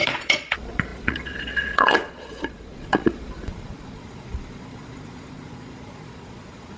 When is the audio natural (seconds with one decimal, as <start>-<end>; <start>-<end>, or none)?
none